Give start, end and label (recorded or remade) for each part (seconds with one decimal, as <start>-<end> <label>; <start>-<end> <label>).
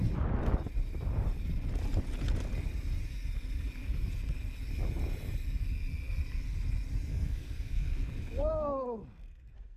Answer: 0.0-7.1 recorded; 7.1-9.8 remade